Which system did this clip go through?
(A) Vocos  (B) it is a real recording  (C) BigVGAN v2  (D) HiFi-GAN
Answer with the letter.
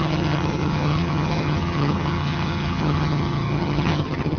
D